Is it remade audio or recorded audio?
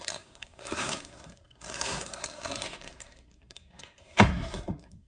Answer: remade